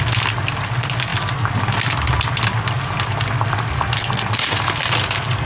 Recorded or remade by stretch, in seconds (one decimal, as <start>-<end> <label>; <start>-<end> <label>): 0.0-5.5 recorded